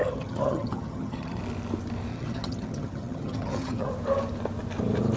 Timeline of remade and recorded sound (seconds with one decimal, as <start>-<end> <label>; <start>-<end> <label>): 0.0-1.4 remade; 1.4-2.1 recorded; 2.1-3.9 remade; 3.9-5.2 recorded